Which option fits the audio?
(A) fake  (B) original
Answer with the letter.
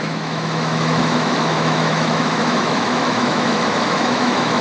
A